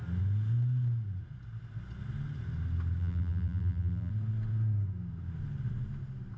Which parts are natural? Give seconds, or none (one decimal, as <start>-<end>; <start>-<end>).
0.0-3.0; 4.1-6.4